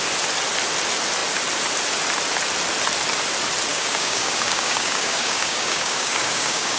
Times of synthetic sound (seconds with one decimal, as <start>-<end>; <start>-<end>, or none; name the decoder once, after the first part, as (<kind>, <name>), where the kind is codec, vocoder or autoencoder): 3.7-6.8 (codec, DAC)